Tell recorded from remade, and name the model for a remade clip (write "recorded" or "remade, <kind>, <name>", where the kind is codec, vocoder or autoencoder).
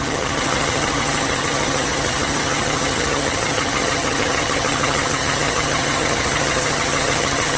remade, vocoder, HiFi-GAN